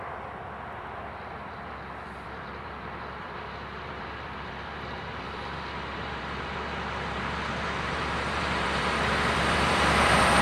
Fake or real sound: fake